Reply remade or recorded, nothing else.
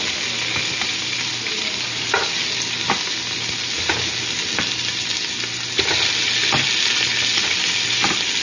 recorded